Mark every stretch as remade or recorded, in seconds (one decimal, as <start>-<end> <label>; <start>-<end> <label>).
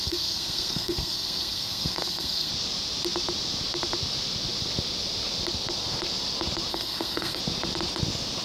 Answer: 0.0-2.5 remade; 2.5-6.7 recorded; 6.7-7.4 remade; 7.4-8.4 recorded